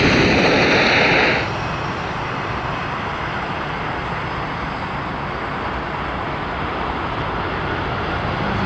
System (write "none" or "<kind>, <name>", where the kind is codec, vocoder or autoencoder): none